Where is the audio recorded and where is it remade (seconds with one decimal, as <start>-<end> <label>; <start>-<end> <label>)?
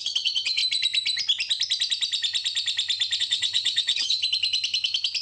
0.0-0.6 remade; 0.6-3.2 recorded; 3.2-4.2 remade; 4.2-5.2 recorded